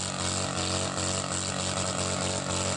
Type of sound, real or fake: real